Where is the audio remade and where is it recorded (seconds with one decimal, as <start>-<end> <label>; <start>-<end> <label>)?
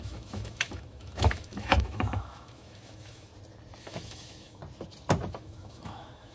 0.0-3.3 remade; 3.3-3.8 recorded; 3.8-4.6 remade; 4.6-5.3 recorded; 5.3-6.3 remade